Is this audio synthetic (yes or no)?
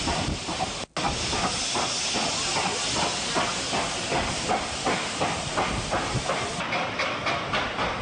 no